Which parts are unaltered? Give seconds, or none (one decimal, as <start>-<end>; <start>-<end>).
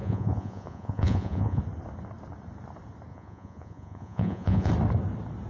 1.6-3.1; 4.7-5.5